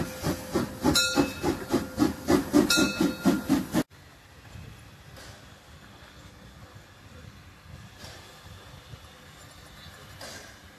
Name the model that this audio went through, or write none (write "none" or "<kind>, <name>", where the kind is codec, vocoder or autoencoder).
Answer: none